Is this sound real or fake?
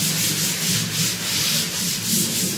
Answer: real